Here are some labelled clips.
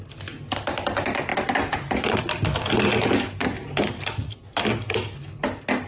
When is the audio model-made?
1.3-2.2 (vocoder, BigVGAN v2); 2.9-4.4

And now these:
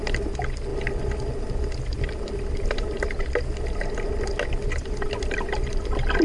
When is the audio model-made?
none

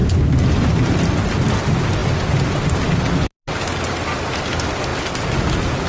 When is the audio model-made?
none

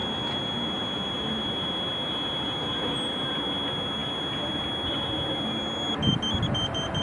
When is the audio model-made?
none

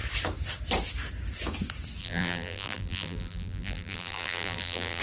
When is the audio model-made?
2.0-5.0 (vocoder, BigVGAN v2)

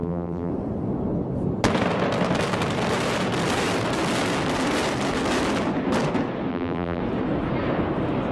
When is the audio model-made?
0.0-0.5 (vocoder, BigVGAN v2); 6.5-7.0